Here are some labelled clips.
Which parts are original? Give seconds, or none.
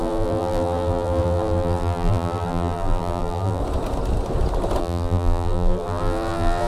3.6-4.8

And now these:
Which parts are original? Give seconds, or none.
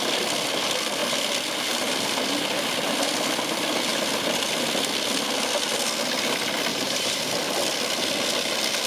0.0-6.7; 7.3-8.9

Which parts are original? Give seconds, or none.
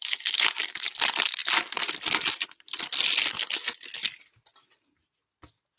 0.0-5.8